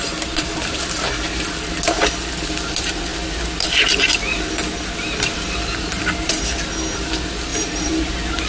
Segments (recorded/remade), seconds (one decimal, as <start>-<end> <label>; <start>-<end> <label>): 0.0-7.5 recorded; 7.5-8.1 remade; 8.1-8.5 recorded